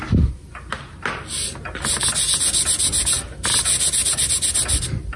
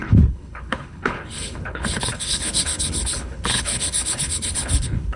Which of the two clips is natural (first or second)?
first